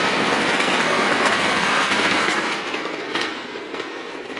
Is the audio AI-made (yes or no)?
yes